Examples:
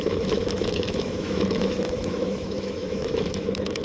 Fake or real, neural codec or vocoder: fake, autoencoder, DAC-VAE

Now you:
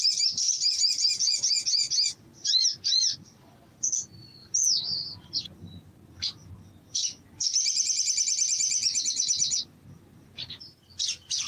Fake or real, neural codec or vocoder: real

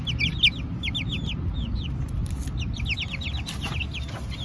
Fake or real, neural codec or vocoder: real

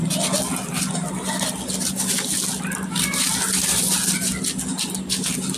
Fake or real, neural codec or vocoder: real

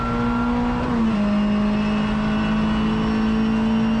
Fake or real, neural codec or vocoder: real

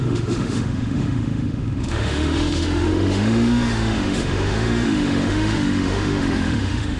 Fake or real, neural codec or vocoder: fake, autoencoder, DAC-VAE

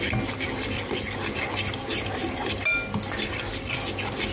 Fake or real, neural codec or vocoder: real